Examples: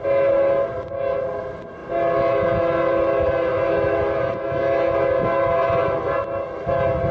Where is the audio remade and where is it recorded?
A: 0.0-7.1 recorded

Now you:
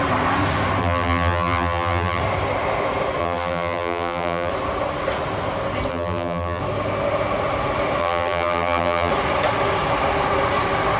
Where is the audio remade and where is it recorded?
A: 0.0-0.8 recorded; 0.8-2.2 remade; 2.2-3.2 recorded; 3.2-4.5 remade; 4.5-5.9 recorded; 5.9-6.6 remade; 6.6-8.0 recorded; 8.0-9.1 remade; 9.1-11.0 recorded

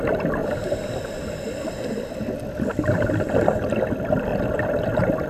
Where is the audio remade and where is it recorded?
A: 0.0-0.4 recorded; 0.4-1.8 remade; 1.8-4.3 recorded; 4.3-5.3 remade

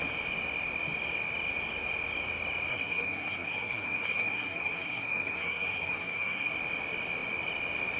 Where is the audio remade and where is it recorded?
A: 0.0-2.7 recorded; 2.7-6.5 remade; 6.5-8.0 recorded

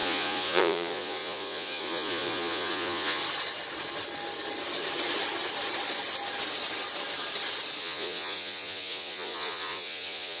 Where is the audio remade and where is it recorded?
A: 0.0-3.2 remade; 3.2-7.8 recorded; 7.8-10.4 remade

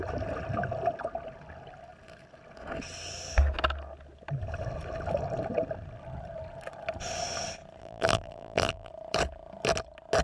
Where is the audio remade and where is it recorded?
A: 0.0-7.8 recorded; 7.8-8.9 remade; 8.9-10.2 recorded

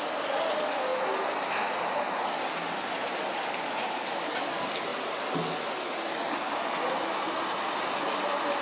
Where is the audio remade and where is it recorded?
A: 0.0-8.6 recorded

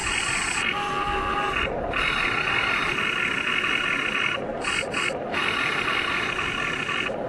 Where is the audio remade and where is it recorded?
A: 0.0-4.5 recorded; 4.5-6.5 remade; 6.5-7.3 recorded